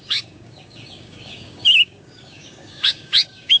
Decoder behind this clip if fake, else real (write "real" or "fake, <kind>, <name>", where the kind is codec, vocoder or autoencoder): fake, codec, DAC